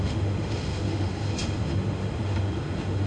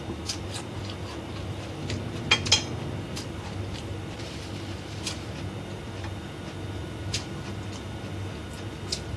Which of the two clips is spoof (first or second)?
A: first